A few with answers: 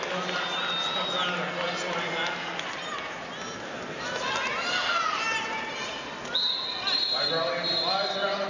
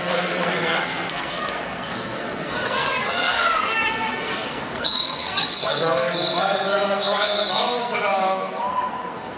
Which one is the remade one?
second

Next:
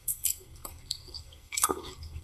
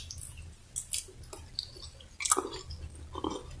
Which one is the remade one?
first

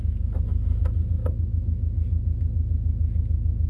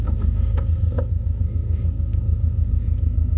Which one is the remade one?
second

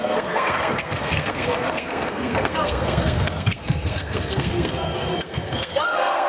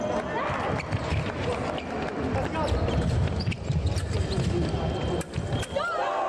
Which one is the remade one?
first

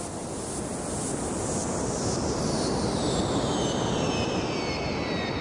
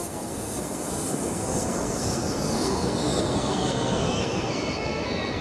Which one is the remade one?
second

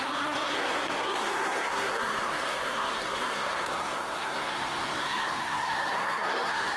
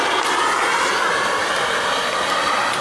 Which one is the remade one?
first